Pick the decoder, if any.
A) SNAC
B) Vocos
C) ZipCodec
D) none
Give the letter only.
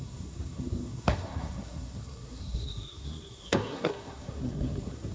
A